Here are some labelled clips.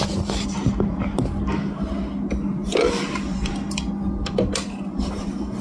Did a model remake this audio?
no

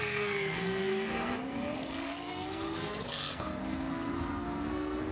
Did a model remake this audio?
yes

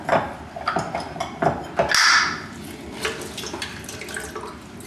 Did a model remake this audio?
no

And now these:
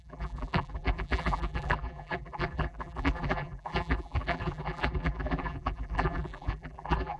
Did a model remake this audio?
yes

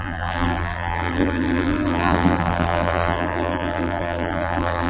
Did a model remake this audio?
yes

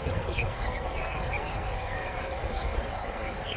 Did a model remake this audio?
yes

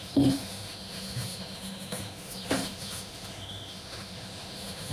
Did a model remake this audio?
yes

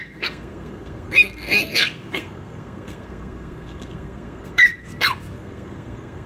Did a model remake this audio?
yes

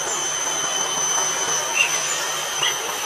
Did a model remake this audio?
no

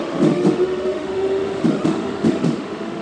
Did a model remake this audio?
yes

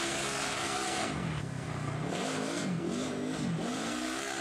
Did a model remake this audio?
yes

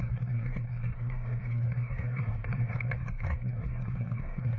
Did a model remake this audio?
yes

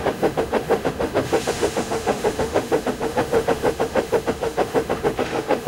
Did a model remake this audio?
yes